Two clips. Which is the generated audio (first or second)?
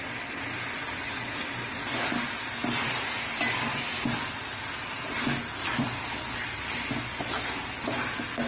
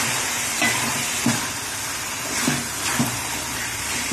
second